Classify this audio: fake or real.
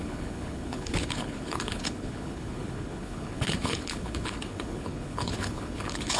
fake